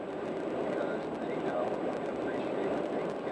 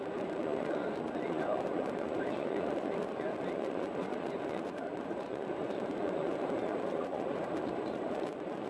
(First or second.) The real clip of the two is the first